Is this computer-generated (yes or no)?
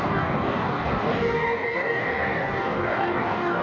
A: yes